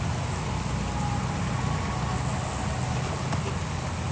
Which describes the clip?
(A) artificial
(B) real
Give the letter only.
B